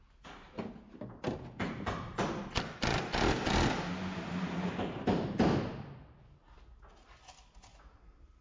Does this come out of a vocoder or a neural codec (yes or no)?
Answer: no